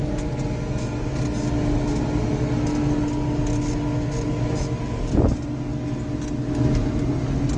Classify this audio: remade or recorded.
recorded